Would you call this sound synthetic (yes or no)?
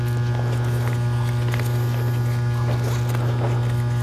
no